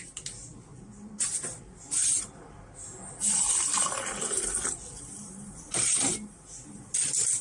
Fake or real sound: real